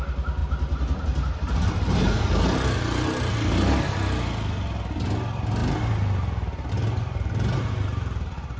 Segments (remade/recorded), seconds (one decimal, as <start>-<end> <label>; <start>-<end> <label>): 0.0-8.6 recorded

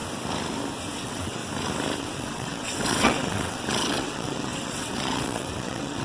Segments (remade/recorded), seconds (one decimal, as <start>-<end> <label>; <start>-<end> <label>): 0.0-1.0 recorded; 1.0-1.4 remade; 1.4-2.0 recorded; 2.0-6.0 remade

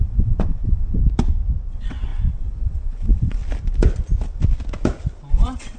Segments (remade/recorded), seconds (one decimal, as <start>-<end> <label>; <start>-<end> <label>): 0.0-1.0 remade; 1.0-1.7 recorded; 1.7-3.4 remade; 3.4-5.3 recorded; 5.3-5.8 remade

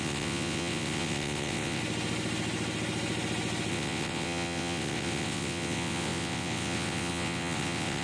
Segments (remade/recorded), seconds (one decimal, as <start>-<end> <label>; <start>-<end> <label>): 0.0-1.8 remade; 1.8-3.7 recorded; 3.7-8.0 remade

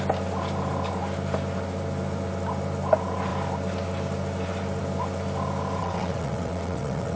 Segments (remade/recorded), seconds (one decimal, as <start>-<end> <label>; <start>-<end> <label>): 0.0-5.8 recorded; 5.8-7.2 remade

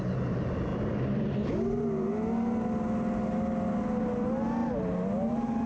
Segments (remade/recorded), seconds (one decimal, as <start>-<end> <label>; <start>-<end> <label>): 0.0-5.7 recorded